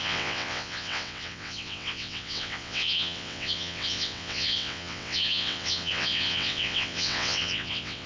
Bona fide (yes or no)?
no